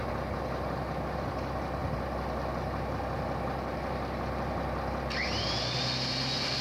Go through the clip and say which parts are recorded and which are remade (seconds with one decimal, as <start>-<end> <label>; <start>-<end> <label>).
0.0-6.6 remade

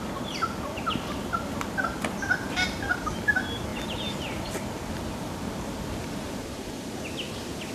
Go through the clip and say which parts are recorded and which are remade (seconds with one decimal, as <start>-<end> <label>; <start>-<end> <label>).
0.0-7.7 remade

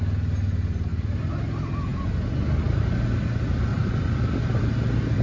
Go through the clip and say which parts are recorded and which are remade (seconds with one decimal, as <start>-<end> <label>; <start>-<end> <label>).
0.0-0.9 recorded; 0.9-1.4 remade; 1.4-3.7 recorded; 3.7-4.7 remade; 4.7-5.2 recorded

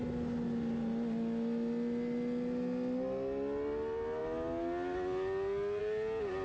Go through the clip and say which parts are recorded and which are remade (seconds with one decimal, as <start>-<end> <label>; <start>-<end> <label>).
0.0-6.4 recorded

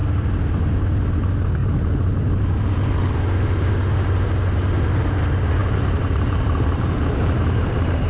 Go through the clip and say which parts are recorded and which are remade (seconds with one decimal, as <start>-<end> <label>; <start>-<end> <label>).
0.0-1.6 recorded; 1.6-3.2 remade; 3.2-5.6 recorded; 5.6-8.1 remade

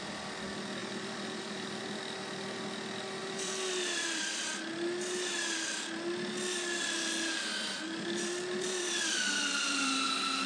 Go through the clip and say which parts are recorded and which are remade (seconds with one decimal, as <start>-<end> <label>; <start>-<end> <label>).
0.0-0.8 recorded; 0.8-1.8 remade; 1.8-3.2 recorded; 3.2-4.3 remade; 4.3-7.5 recorded; 7.5-10.5 remade

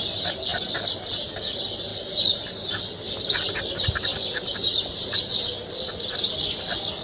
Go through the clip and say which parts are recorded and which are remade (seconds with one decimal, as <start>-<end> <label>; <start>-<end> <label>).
0.0-1.9 remade; 1.9-3.5 recorded; 3.5-4.1 remade; 4.1-5.4 recorded; 5.4-7.0 remade